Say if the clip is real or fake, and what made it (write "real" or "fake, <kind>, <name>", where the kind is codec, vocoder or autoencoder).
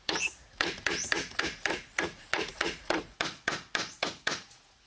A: fake, vocoder, Vocos